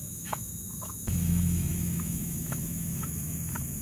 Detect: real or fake fake